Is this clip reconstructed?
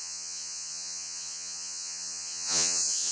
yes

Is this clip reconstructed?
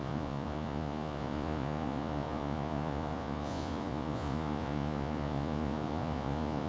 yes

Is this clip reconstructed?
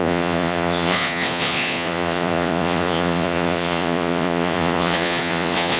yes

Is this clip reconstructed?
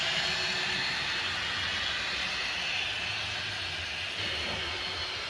no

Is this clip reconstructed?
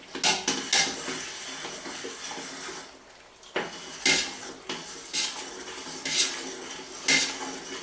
no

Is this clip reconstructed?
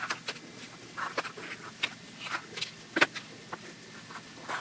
no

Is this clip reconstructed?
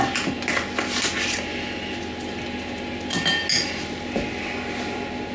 no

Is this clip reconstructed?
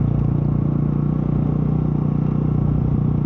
no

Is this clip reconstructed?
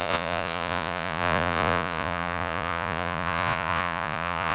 yes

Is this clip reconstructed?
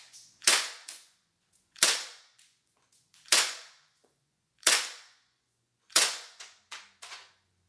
yes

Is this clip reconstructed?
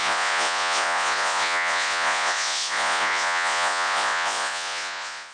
yes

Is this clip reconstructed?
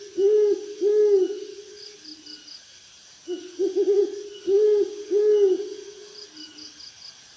no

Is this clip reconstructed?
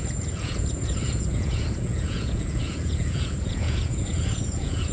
yes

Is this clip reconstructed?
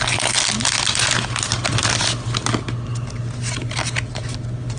no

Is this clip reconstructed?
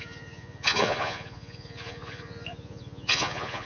yes